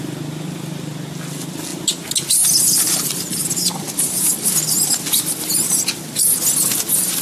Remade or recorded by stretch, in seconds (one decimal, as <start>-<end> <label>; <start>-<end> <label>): 0.0-7.2 recorded